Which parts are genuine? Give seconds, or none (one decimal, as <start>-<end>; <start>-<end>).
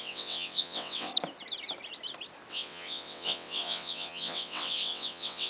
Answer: 1.1-2.5